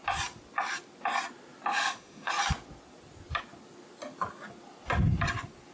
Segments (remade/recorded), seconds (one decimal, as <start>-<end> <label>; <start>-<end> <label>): 0.0-1.7 recorded; 1.7-2.3 remade; 2.3-5.7 recorded